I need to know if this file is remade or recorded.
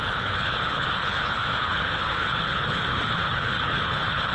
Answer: remade